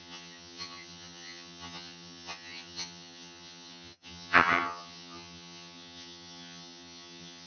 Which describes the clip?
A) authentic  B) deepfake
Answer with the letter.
B